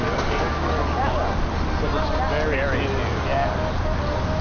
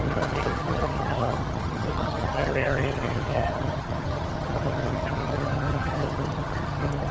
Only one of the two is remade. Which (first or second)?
second